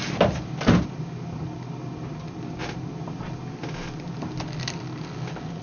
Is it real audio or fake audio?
real